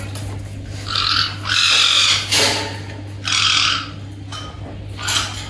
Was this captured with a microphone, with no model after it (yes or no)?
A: yes